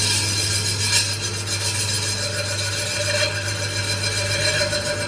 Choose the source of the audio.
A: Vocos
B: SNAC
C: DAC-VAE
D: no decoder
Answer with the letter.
D